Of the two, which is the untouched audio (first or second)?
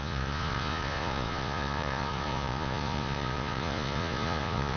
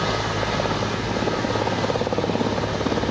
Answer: second